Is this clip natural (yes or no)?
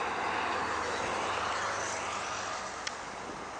yes